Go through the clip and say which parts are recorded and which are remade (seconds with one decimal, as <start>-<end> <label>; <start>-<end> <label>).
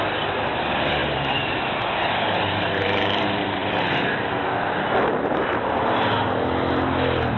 0.0-7.4 recorded